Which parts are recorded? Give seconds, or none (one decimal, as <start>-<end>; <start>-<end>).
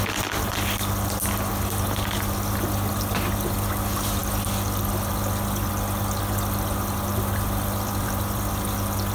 0.0-7.1; 8.5-9.1